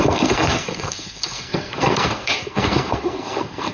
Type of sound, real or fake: fake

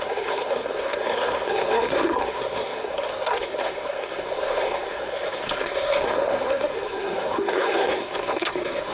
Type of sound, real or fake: fake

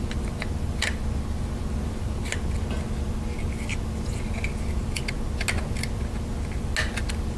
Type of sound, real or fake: real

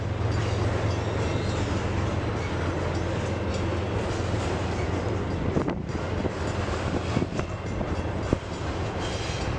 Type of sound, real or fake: real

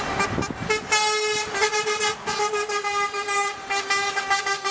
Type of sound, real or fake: real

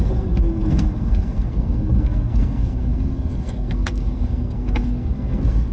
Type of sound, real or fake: fake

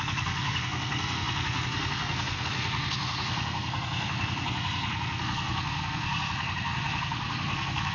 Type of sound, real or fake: fake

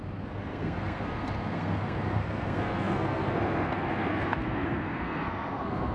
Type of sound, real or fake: fake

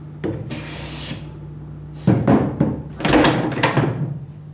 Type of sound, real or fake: real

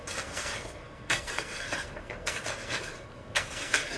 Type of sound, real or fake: fake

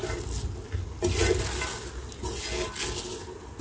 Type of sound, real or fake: real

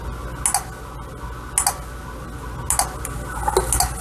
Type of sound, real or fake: real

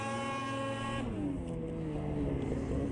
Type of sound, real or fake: real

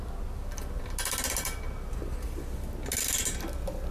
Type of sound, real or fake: real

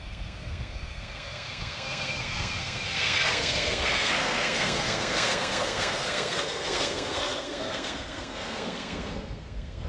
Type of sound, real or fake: fake